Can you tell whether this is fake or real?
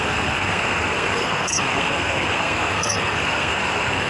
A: fake